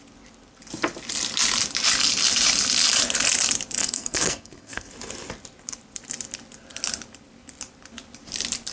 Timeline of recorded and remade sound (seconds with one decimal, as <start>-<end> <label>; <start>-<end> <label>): 0.0-3.8 recorded; 3.8-4.9 remade; 4.9-8.7 recorded